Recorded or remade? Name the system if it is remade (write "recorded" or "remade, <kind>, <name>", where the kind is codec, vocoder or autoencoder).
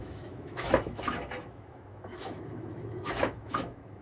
remade, autoencoder, DAC-VAE